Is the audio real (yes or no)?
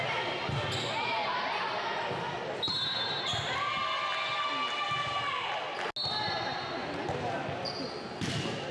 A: yes